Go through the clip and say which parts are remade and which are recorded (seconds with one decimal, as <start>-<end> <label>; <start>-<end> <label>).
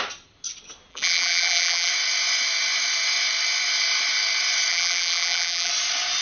0.0-0.9 recorded; 0.9-1.9 remade; 1.9-4.7 recorded; 4.7-5.7 remade; 5.7-6.2 recorded